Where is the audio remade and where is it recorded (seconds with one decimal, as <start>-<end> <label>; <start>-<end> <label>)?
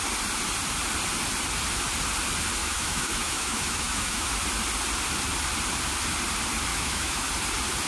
0.0-2.6 recorded; 2.6-4.3 remade; 4.3-6.7 recorded; 6.7-7.3 remade; 7.3-7.9 recorded